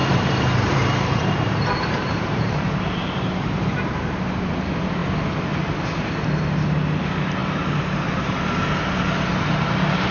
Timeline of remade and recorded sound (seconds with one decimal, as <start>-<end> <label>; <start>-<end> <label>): 0.0-3.9 remade; 3.9-10.1 recorded